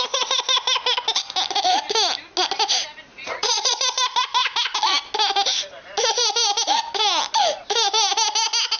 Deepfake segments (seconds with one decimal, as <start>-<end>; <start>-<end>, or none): 3.1-3.8

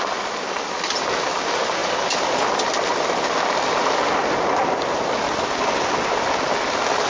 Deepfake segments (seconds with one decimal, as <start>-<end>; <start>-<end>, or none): none

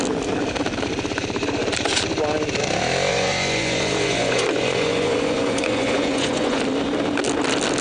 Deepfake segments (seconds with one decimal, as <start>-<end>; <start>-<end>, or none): 3.1-6.6

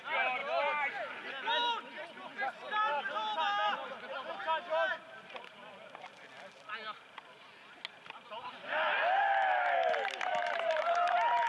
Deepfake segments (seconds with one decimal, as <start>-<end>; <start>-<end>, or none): none

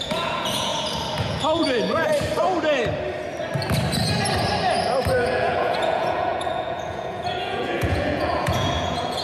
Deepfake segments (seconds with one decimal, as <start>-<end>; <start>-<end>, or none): 0.0-0.7; 1.2-2.1; 5.2-9.2

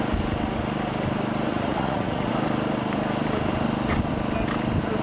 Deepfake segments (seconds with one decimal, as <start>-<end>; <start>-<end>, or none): 1.5-2.3